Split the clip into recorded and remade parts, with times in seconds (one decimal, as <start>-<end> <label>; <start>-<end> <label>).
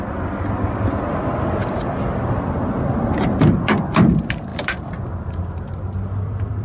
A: 0.0-6.6 recorded